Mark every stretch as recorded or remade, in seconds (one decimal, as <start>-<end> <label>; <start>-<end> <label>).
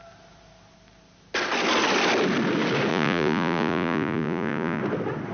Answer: 0.0-2.9 recorded; 2.9-4.8 remade; 4.8-5.3 recorded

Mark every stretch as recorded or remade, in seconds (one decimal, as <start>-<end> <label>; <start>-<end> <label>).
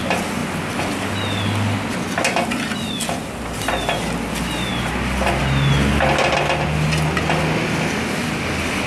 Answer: 0.0-8.9 recorded